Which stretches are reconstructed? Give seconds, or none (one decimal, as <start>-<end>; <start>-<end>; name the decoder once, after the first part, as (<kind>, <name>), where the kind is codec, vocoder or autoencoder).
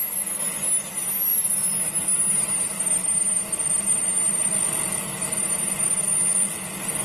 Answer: none